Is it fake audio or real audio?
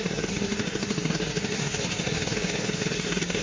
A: fake